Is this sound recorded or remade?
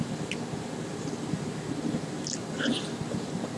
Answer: recorded